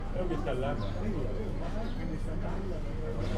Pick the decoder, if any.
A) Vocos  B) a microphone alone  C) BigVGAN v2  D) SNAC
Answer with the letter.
B